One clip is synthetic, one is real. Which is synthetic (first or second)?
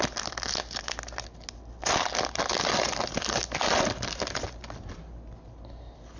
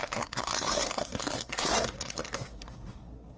second